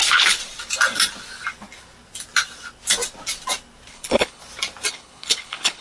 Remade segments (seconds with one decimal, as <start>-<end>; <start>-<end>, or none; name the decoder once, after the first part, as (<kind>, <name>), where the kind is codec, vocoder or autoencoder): 0.0-0.4 (codec, HILCodec); 3.9-4.4; 4.9-5.8